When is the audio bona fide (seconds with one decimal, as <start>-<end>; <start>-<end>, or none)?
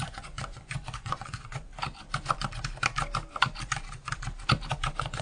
1.7-4.7